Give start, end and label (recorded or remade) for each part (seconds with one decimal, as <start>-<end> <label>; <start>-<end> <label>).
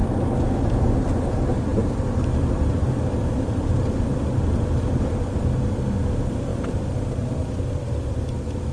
0.0-1.7 recorded; 1.7-5.4 remade; 5.4-6.5 recorded; 6.5-7.6 remade; 7.6-8.7 recorded